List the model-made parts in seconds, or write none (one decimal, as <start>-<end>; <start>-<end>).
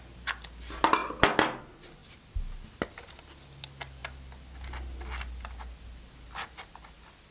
none